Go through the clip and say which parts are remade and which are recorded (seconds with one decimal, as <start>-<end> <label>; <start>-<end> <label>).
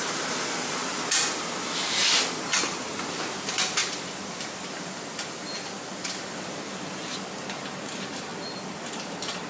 0.0-3.8 recorded; 3.8-6.2 remade; 6.2-8.3 recorded; 8.3-9.5 remade